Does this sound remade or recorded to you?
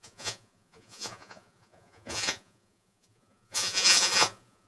remade